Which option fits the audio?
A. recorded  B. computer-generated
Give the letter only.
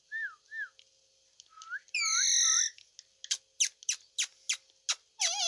A